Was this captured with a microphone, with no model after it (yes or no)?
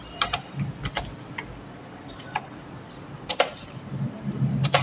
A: yes